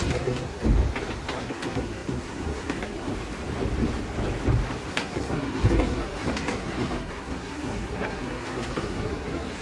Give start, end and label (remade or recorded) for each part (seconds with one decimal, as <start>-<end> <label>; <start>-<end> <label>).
0.0-0.6 remade; 0.6-1.3 recorded; 1.3-3.1 remade; 3.1-4.9 recorded; 4.9-9.6 remade